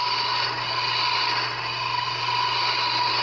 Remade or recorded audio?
recorded